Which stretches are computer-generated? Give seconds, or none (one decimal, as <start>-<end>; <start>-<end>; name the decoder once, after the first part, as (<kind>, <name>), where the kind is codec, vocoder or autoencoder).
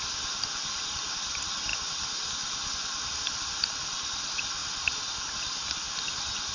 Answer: none